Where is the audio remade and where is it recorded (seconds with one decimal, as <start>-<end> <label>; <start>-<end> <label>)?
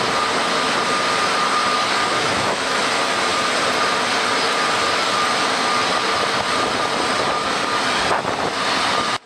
0.0-2.1 recorded; 2.1-2.9 remade; 2.9-9.3 recorded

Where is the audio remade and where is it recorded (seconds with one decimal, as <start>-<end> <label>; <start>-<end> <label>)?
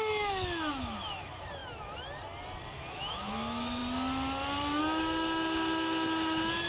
0.0-1.6 remade; 1.6-2.7 recorded; 2.7-3.8 remade; 3.8-4.8 recorded; 4.8-6.7 remade